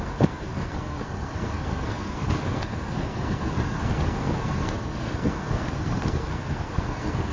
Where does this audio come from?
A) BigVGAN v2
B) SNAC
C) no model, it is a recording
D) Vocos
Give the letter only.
B